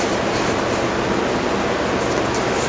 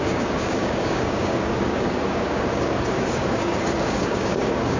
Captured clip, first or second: first